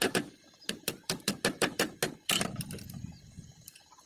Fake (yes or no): yes